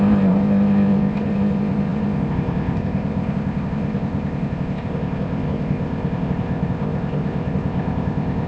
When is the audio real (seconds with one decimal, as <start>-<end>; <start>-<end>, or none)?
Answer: none